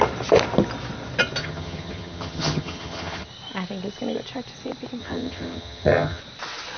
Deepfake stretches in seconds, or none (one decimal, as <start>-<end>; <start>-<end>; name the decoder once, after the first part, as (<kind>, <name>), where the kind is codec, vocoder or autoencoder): 1.4-3.3 (vocoder, HiFi-GAN); 5.0-6.2